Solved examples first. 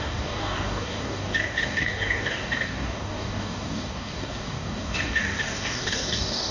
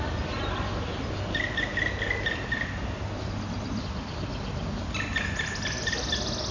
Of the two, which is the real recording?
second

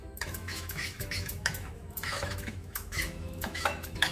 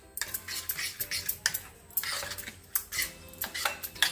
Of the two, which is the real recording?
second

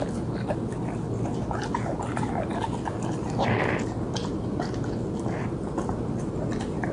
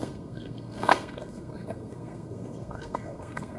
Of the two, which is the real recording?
first